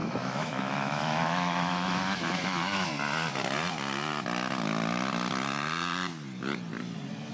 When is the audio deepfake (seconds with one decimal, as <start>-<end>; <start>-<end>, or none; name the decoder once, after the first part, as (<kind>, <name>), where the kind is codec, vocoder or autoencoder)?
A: 0.0-2.9 (autoencoder, DAC-VAE)